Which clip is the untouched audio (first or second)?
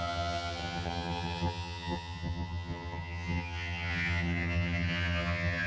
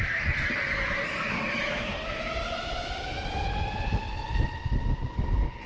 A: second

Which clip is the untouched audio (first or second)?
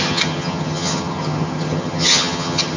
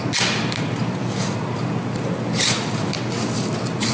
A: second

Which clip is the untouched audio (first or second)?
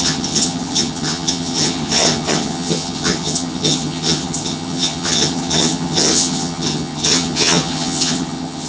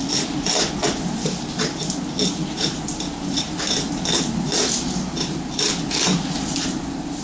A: second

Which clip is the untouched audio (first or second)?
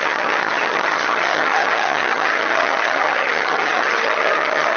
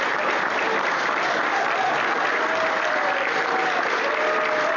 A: second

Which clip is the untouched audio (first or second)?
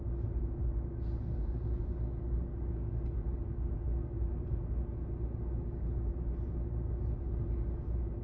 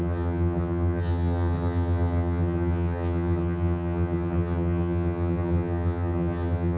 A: first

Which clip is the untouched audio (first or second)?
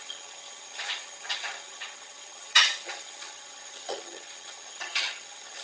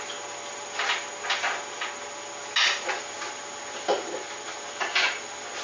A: second